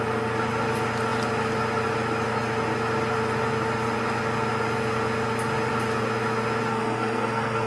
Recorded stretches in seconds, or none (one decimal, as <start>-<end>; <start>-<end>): 0.0-6.7